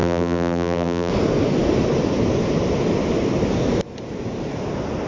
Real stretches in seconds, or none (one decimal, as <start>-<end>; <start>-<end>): 1.1-5.1